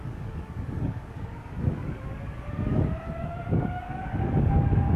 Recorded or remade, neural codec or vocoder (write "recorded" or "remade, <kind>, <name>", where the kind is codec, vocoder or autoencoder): remade, codec, DAC